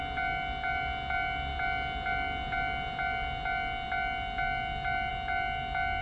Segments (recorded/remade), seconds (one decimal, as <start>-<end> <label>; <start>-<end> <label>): 0.0-6.0 recorded